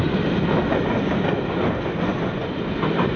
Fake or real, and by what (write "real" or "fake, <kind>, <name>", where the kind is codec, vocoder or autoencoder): real